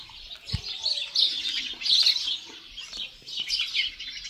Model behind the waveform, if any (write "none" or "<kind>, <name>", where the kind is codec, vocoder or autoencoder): none